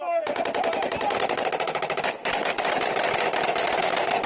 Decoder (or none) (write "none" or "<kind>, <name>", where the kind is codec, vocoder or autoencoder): none